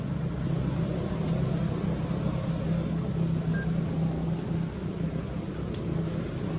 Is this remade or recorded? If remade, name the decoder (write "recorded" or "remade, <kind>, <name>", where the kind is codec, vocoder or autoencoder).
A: recorded